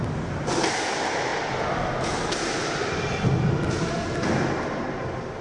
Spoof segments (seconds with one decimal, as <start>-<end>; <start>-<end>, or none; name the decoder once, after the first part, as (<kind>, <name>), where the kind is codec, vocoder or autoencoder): none